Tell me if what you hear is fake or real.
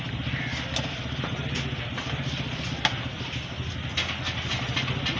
real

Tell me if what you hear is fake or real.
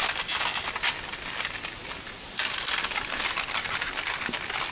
real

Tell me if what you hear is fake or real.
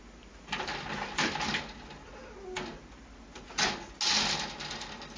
real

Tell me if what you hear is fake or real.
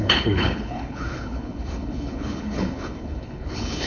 fake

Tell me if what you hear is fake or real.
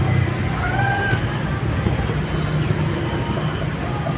real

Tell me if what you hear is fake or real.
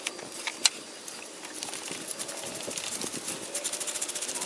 real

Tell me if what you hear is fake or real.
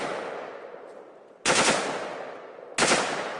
real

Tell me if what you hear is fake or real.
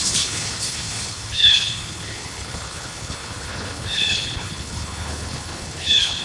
fake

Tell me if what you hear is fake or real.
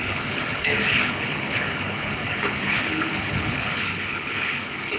fake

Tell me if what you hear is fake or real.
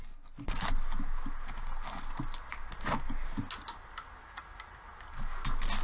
real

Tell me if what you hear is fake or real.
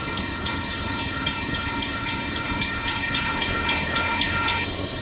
fake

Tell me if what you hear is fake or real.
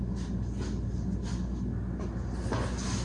real